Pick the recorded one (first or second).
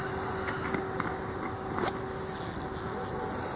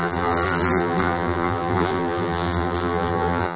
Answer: first